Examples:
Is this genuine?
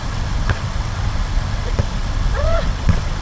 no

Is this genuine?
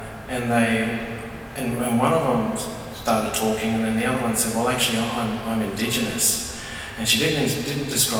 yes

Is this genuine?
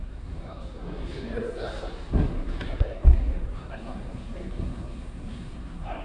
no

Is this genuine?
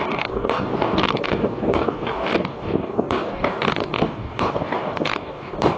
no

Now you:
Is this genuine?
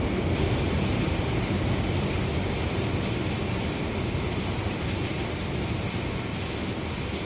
yes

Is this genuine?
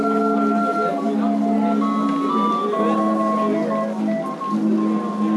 yes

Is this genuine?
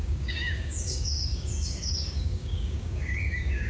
no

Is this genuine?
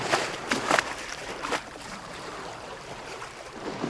no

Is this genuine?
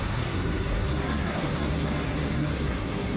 no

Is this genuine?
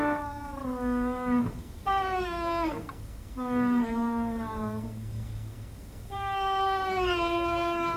no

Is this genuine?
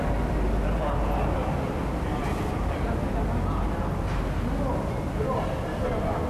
yes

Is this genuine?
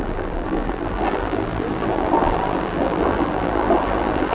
no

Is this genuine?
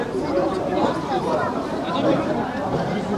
no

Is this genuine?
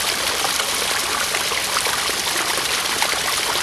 yes